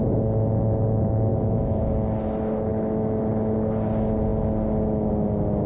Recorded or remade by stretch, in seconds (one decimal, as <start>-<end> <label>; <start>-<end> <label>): 0.0-1.3 recorded; 1.3-1.9 remade; 1.9-2.7 recorded; 2.7-3.2 remade; 3.2-5.7 recorded